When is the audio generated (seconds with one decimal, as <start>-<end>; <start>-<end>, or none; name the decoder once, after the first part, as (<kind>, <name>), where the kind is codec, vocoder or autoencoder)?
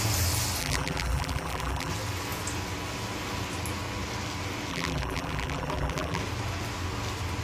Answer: 0.6-1.9 (vocoder, BigVGAN v2); 4.7-6.2